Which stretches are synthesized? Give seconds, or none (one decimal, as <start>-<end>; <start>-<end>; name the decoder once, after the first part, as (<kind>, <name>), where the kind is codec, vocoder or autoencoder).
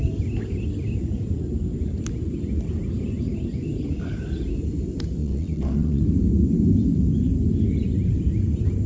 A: 5.2-6.0 (vocoder, Vocos)